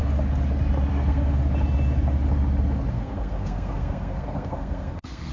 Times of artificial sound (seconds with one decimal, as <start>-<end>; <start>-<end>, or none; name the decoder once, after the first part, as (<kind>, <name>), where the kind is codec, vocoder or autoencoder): 0.9-1.4 (codec, SNAC); 2.9-5.3